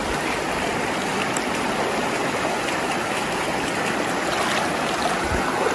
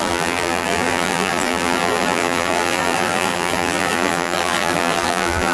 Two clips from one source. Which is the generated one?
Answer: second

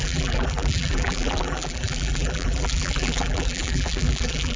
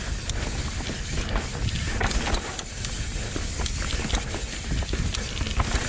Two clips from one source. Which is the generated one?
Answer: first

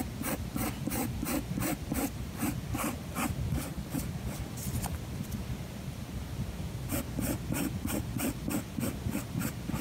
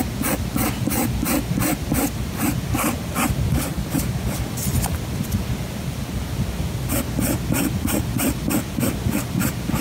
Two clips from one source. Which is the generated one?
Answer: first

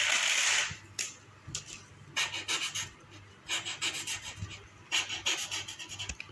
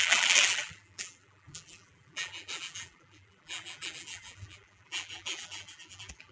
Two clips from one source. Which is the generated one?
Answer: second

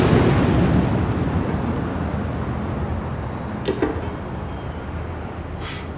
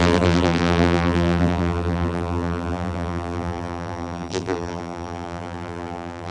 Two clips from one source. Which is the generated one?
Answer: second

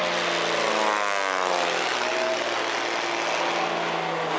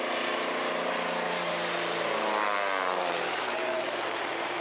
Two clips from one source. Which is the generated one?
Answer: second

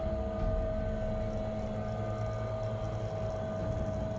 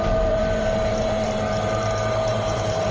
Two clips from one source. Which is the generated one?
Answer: second